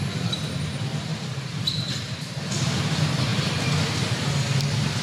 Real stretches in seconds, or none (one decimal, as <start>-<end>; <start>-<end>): 0.0-1.1; 2.4-5.0